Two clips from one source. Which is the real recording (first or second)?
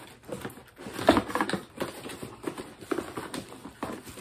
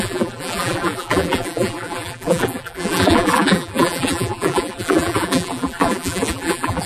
first